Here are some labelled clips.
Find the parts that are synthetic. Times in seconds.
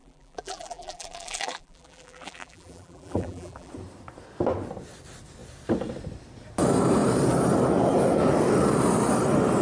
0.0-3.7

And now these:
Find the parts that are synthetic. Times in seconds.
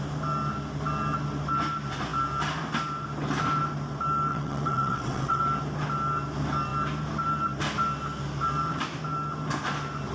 4.3-5.4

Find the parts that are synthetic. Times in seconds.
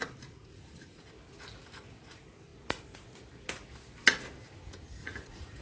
0.5-1.1; 5.0-5.6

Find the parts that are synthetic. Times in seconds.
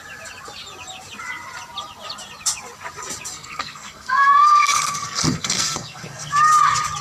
3.3-6.3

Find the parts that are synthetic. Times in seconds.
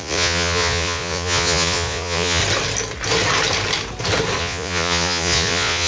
0.0-2.4; 4.4-5.9